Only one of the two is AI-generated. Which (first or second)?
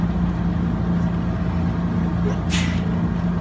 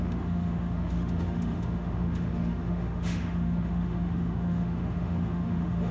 second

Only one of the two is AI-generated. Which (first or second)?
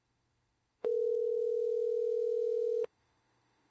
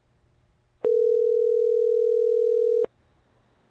first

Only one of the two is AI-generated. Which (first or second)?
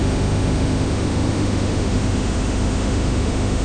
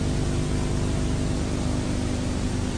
first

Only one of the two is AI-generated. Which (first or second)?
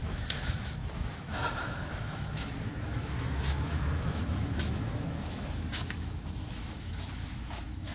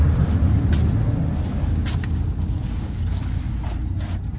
first